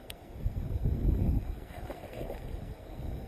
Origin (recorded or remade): remade